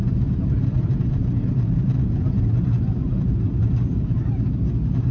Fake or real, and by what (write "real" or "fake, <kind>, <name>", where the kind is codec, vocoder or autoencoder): fake, vocoder, BigVGAN v2